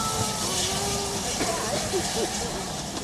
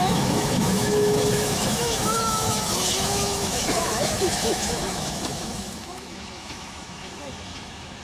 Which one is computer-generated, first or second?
second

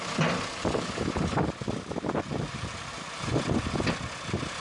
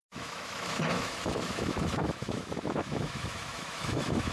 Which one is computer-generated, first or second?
second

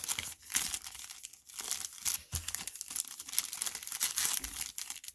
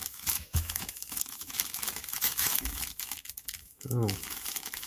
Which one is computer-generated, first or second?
second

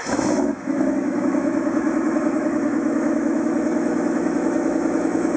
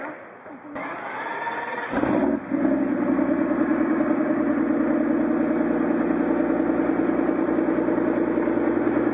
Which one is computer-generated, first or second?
first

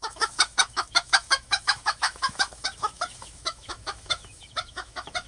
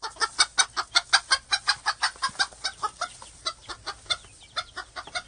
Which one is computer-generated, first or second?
first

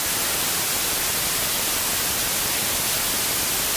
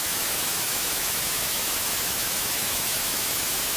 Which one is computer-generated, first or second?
second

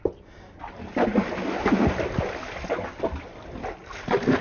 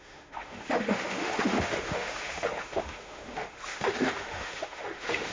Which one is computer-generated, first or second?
second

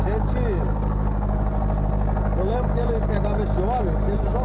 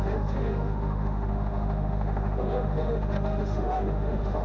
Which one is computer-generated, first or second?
second